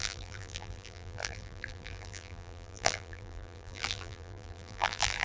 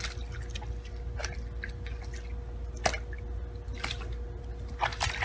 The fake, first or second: first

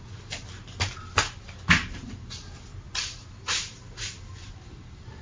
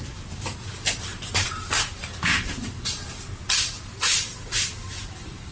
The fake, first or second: second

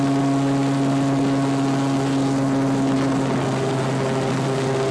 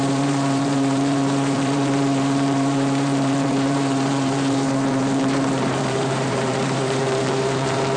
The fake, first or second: second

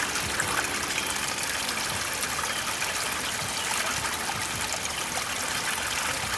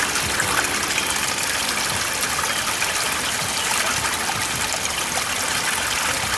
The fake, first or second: second